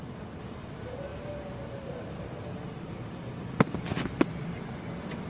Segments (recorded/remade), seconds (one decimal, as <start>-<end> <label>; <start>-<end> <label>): 0.0-5.3 recorded